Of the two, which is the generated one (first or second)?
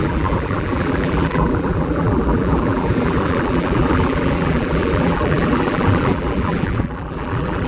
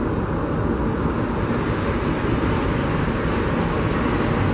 first